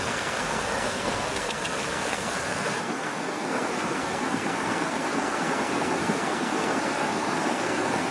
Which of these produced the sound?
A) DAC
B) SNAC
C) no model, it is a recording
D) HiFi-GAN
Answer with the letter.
B